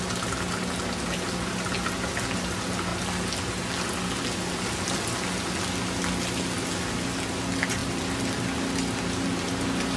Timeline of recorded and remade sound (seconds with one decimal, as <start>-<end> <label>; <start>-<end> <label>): 0.0-10.0 recorded